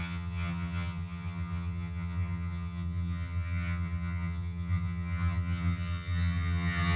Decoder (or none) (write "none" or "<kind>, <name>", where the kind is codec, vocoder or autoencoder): vocoder, HiFi-GAN